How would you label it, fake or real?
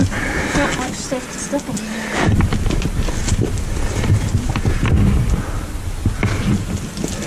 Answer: real